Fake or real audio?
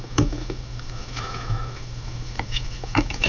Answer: fake